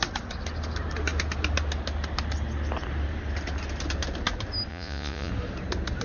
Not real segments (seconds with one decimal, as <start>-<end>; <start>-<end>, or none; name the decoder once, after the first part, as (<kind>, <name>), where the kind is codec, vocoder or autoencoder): 4.7-5.3 (vocoder, Vocos)